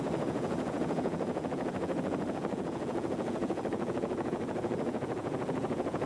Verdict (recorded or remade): remade